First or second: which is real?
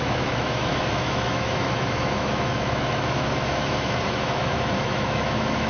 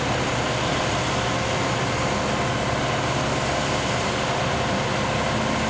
second